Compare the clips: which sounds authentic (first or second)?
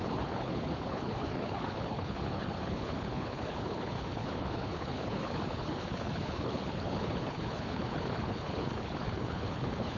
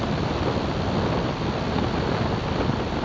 second